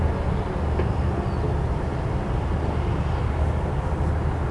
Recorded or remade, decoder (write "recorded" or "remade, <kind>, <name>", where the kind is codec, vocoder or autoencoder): recorded